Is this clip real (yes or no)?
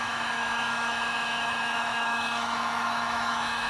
no